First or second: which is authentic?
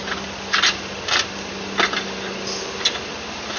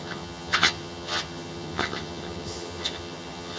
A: first